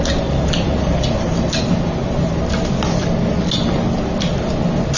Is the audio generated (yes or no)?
no